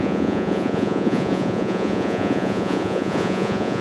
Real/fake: fake